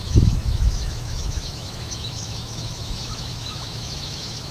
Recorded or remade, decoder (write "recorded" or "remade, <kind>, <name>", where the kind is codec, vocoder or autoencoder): remade, autoencoder, DAC-VAE